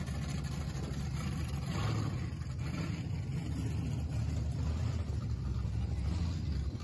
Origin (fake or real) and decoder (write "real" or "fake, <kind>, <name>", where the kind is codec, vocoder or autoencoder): real